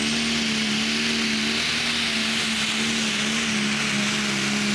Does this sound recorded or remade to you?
recorded